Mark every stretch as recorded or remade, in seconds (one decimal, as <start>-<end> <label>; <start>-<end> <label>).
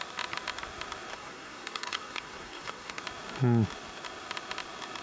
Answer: 0.0-1.1 recorded; 1.1-3.0 remade; 3.0-5.0 recorded